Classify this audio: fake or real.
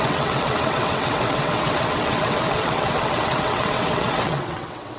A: fake